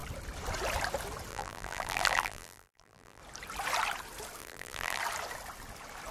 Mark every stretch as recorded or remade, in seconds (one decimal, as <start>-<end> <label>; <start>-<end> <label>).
0.0-1.3 recorded; 1.3-3.2 remade; 3.2-4.4 recorded; 4.4-5.0 remade; 5.0-6.1 recorded